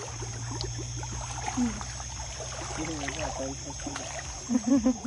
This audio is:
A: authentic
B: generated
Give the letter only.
A